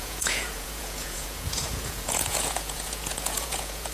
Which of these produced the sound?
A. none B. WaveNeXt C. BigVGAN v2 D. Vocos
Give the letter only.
D